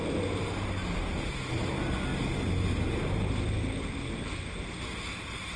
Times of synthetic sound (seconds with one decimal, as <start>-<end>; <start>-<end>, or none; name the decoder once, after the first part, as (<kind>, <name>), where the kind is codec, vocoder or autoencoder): none